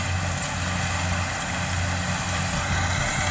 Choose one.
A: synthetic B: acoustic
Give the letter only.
B